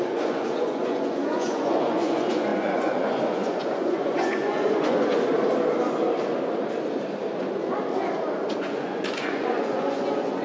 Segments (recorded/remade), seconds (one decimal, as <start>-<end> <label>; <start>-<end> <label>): 0.0-5.3 remade; 5.3-8.6 recorded; 8.6-10.4 remade